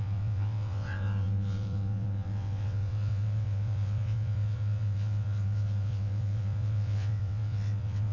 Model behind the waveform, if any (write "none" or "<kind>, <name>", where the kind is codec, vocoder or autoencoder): vocoder, WaveNeXt